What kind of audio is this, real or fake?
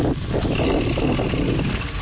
real